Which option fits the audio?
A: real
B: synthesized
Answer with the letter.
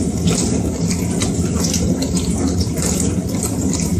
A